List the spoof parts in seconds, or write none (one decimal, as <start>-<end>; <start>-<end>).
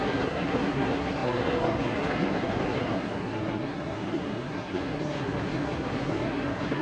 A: 0.0-6.8